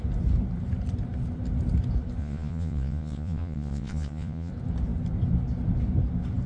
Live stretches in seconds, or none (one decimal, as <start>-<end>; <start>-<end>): 0.0-2.2; 4.5-6.5